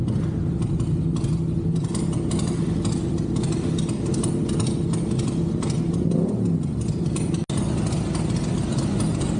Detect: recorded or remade recorded